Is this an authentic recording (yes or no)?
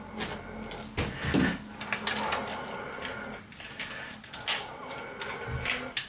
yes